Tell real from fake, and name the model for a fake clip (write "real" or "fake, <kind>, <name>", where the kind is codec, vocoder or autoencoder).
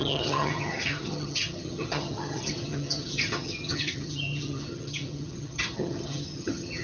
fake, vocoder, HiFi-GAN